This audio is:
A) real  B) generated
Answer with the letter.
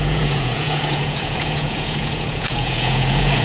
B